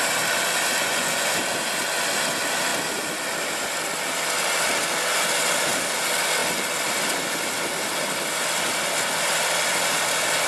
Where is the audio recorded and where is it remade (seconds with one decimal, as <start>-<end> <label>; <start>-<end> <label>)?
0.0-0.8 recorded; 0.8-1.4 remade; 1.4-10.5 recorded